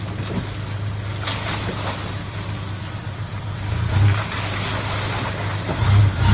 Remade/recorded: recorded